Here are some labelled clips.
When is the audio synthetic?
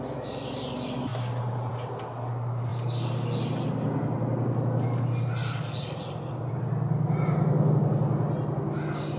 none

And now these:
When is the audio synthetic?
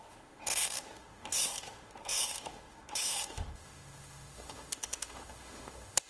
0.0-6.1 (autoencoder, DAC-VAE)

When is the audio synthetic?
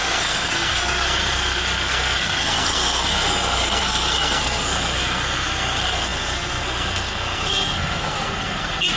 0.0-9.0 (codec, SNAC)